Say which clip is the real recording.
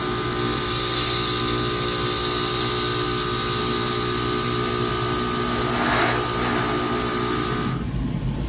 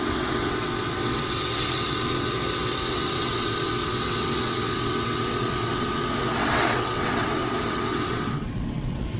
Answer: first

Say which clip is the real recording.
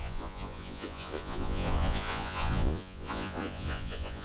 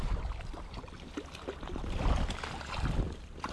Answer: second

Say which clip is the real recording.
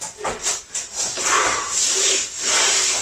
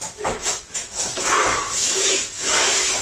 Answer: first